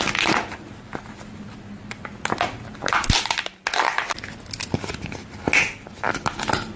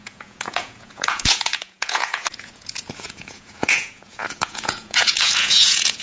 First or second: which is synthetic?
second